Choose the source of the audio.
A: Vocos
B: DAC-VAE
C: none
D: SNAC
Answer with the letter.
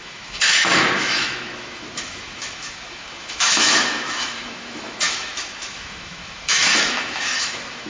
B